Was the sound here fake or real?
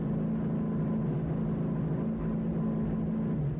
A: real